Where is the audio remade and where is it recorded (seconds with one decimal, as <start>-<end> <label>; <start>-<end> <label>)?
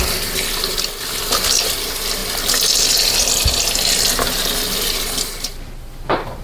0.0-6.4 recorded